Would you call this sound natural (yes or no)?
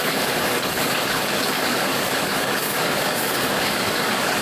no